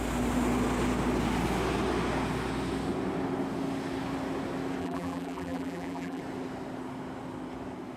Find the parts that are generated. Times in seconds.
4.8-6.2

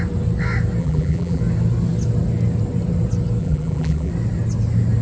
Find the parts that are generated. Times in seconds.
0.8-1.4; 3.4-4.1

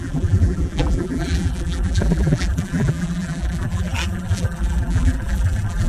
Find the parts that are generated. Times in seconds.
0.0-5.9

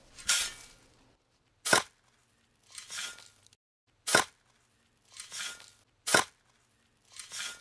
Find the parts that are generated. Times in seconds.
none